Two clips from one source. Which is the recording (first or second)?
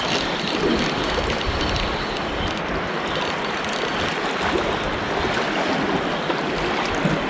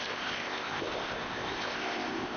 first